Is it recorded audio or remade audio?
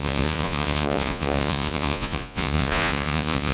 remade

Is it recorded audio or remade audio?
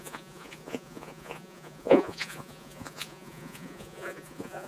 remade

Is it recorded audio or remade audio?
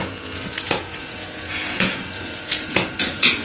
remade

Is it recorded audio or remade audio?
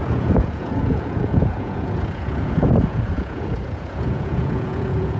remade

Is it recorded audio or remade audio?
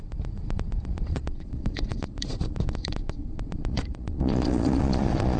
remade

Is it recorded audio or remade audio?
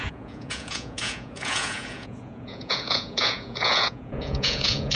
remade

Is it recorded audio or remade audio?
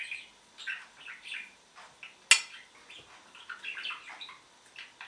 recorded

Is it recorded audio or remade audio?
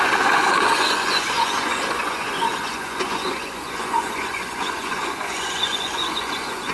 remade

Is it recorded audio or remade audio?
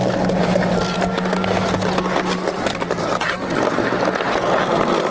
recorded